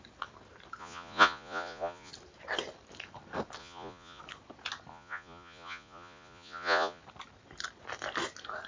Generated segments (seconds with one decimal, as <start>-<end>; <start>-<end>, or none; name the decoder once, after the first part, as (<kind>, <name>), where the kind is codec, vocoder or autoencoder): 0.8-2.1 (vocoder, Vocos); 3.6-4.2; 4.9-7.0